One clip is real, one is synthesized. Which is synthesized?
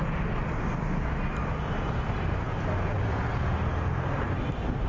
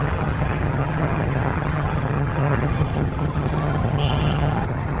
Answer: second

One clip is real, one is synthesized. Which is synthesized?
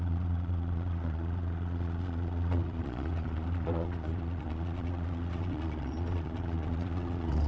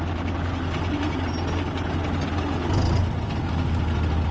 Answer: first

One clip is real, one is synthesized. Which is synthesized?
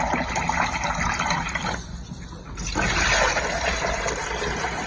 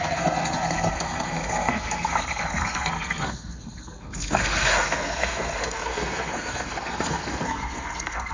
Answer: second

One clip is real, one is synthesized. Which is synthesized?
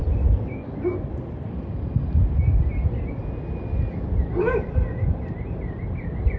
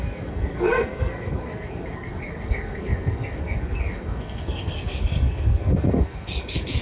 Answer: second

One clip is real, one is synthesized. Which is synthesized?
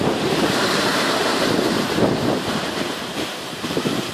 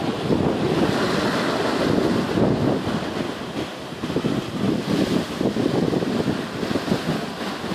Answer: first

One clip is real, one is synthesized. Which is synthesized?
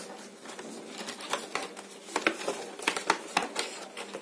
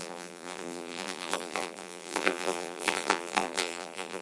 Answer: second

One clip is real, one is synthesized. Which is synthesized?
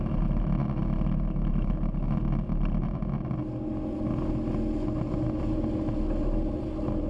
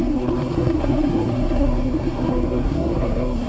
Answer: second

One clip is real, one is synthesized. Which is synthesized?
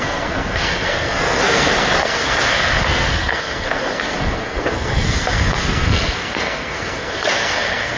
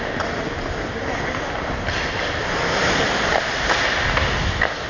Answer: first